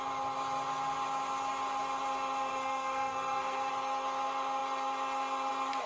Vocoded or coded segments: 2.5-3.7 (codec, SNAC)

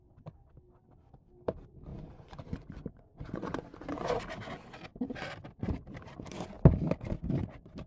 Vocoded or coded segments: 1.9-4.2 (vocoder, Vocos)

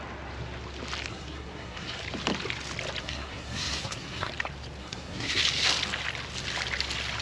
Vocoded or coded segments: 1.1-2.0 (codec, SNAC); 3.0-4.3; 4.8-5.4

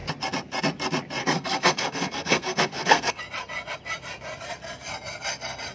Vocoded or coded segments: 1.2-3.2 (codec, SNAC)

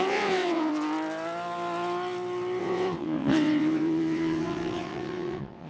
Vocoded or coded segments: 0.0-0.7 (vocoder, WaveNeXt); 2.6-5.7